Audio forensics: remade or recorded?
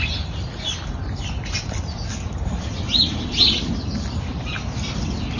recorded